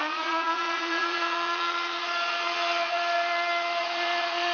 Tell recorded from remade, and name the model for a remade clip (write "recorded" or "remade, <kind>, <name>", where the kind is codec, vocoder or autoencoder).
remade, vocoder, Vocos